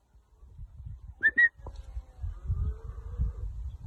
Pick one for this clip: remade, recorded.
recorded